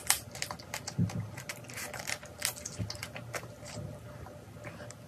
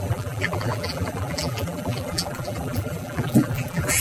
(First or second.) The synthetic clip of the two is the second